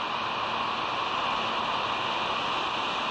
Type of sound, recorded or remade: recorded